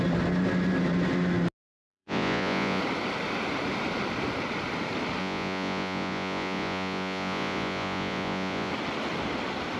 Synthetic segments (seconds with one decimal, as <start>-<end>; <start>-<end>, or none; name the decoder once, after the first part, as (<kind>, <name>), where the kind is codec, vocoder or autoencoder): 1.9-2.8 (vocoder, Vocos); 5.2-8.7